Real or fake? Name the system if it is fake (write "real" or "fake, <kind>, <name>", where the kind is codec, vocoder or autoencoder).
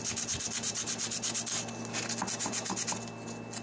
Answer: real